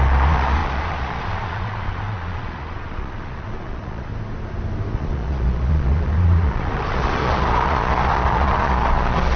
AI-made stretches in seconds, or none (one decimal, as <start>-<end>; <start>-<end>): 0.0-4.1; 4.9-9.4